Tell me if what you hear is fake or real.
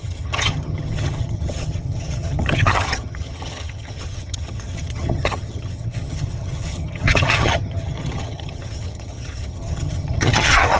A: fake